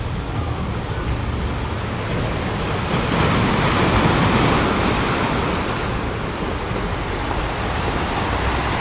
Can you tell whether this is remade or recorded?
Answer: recorded